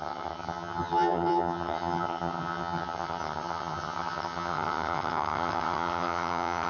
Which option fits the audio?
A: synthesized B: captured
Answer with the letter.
A